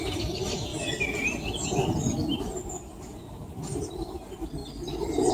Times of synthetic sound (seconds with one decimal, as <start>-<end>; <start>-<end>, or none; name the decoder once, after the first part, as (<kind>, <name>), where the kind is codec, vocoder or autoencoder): 0.0-0.7 (vocoder, BigVGAN v2); 3.9-4.6